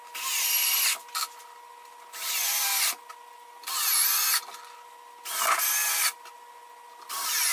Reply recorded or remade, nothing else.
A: recorded